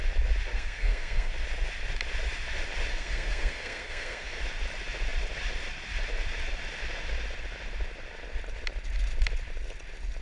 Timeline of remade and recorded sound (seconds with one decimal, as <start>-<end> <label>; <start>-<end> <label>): 0.0-0.5 recorded; 0.5-1.3 remade; 1.3-2.9 recorded; 2.9-4.4 remade; 4.4-10.2 recorded